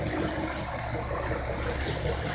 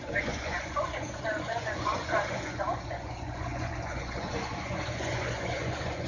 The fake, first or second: second